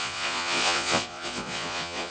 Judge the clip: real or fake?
fake